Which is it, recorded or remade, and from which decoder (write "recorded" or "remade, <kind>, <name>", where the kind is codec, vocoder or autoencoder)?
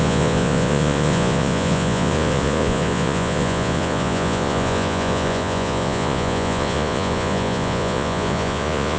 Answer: remade, vocoder, Vocos